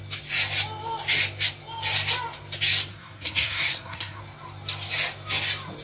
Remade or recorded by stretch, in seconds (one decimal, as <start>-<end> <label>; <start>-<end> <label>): 0.0-2.9 recorded; 2.9-4.2 remade; 4.2-5.8 recorded

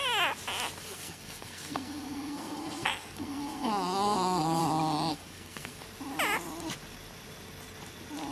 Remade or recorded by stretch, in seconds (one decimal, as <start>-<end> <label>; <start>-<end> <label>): 0.0-0.8 recorded; 0.8-4.6 remade; 4.6-5.1 recorded; 5.1-5.8 remade; 5.8-8.3 recorded

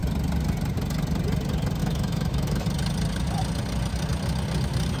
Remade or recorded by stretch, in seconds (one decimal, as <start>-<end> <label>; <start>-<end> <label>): 0.0-1.8 recorded; 1.8-2.6 remade; 2.6-5.0 recorded